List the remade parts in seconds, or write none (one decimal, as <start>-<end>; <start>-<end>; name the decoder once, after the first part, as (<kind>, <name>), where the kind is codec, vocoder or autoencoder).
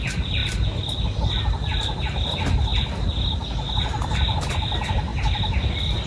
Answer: none